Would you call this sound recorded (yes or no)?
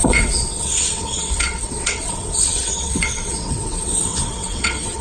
no